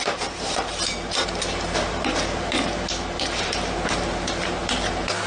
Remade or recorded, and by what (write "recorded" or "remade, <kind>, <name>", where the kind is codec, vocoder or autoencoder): remade, vocoder, BigVGAN v2